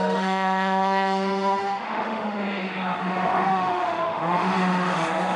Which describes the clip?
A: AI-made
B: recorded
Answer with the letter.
A